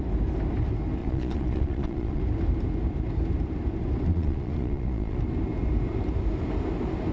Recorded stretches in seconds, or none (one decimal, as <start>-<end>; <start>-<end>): 0.0-1.0; 2.2-4.1; 5.2-7.1